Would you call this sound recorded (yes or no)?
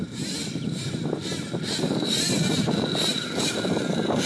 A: yes